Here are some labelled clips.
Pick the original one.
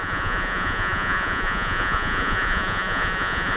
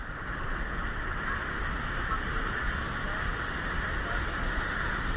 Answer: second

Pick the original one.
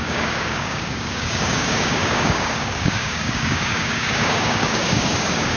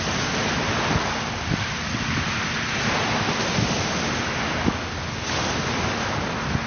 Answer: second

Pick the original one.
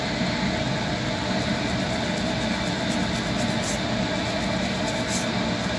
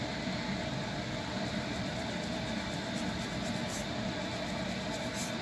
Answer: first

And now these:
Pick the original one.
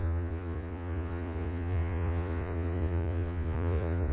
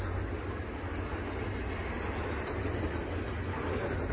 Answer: second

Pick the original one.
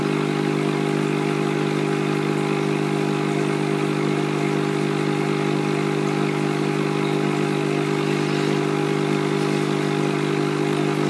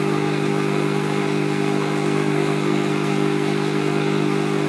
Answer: first